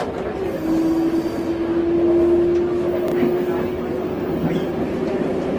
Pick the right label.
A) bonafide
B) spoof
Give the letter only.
A